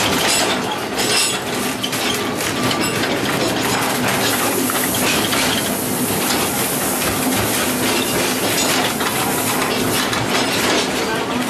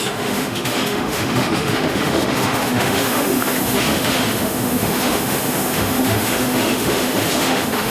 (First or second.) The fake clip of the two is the second